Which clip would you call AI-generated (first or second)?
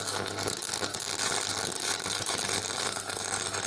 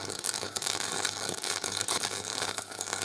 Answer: second